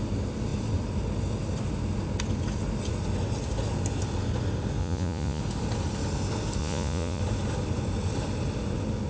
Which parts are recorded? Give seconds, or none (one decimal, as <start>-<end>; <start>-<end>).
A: 0.0-4.8; 5.4-6.6; 7.2-9.1